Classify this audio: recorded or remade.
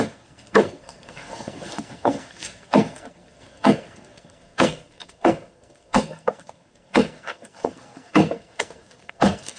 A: remade